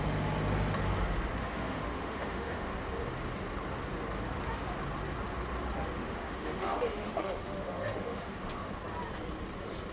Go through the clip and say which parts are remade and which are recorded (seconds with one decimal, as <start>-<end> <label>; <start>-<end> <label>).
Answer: 0.0-1.4 recorded; 1.4-2.7 remade; 2.7-6.0 recorded; 6.0-8.7 remade; 8.7-9.9 recorded